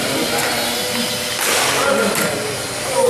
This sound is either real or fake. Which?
real